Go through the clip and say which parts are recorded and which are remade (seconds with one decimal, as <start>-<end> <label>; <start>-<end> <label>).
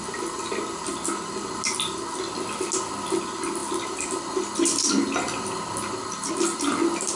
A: 0.0-7.2 recorded